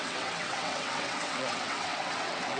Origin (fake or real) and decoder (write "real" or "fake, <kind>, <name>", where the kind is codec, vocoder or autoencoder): fake, vocoder, WaveNeXt